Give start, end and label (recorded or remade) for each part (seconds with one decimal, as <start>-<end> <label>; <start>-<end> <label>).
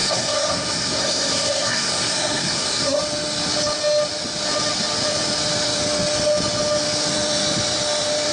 0.0-3.0 remade; 3.0-8.3 recorded